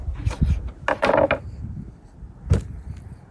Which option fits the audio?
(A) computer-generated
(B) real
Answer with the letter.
B